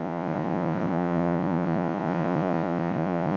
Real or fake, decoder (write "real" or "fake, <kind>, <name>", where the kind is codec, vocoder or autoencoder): fake, vocoder, Vocos